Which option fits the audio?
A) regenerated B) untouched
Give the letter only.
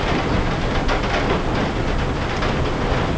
B